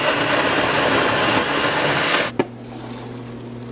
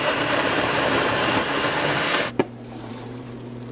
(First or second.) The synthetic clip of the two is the second